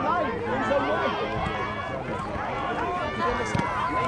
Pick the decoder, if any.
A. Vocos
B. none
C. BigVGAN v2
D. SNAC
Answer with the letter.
B